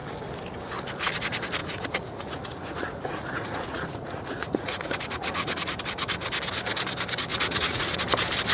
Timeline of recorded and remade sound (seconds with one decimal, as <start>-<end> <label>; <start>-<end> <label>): 0.0-1.6 recorded; 1.6-5.8 remade; 5.8-7.3 recorded; 7.3-8.0 remade; 8.0-8.5 recorded